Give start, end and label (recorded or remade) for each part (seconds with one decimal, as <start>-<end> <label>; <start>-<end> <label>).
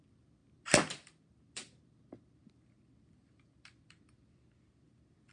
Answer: 0.0-5.3 recorded